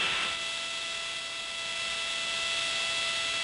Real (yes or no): yes